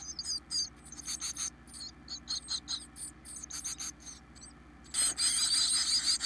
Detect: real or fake real